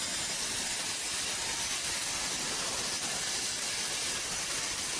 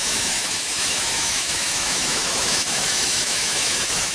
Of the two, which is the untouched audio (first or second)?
first